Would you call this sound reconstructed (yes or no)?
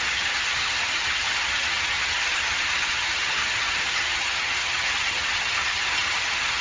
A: yes